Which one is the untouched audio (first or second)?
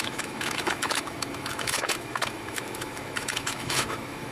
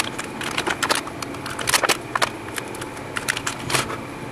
second